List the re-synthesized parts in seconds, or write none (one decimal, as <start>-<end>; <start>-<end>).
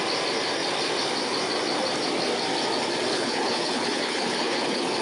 3.1-5.0